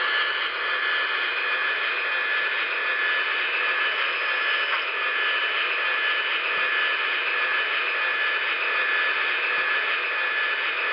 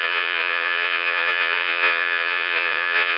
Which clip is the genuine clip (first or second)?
first